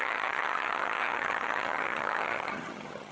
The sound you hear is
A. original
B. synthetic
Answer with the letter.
B